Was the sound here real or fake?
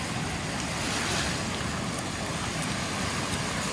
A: real